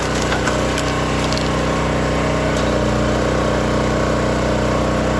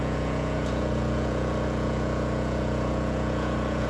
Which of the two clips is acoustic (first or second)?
first